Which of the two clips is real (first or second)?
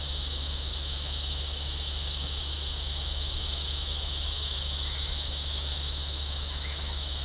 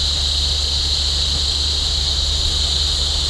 second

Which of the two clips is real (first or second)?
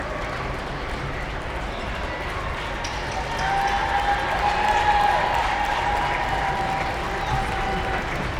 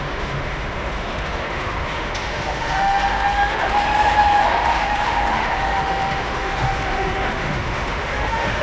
first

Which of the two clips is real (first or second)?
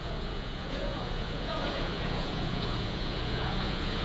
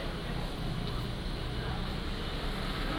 second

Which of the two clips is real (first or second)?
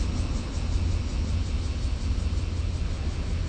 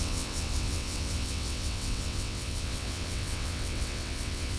first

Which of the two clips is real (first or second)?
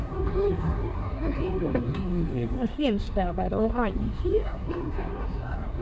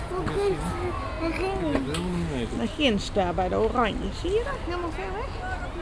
second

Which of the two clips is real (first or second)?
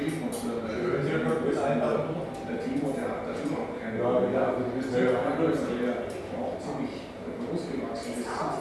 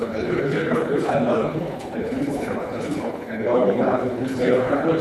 first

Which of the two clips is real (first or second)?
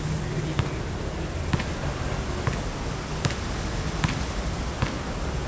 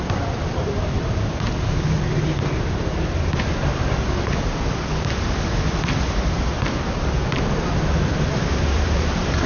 first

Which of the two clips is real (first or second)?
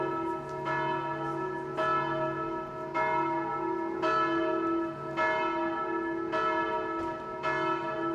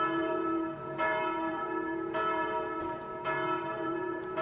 first